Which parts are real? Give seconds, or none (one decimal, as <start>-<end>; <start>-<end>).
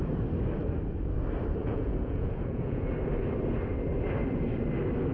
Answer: 0.0-1.6; 2.9-5.1